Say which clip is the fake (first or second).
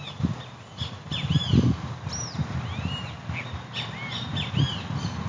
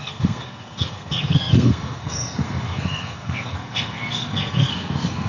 second